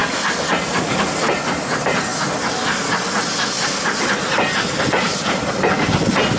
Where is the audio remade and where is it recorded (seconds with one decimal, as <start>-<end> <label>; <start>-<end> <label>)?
0.0-6.4 recorded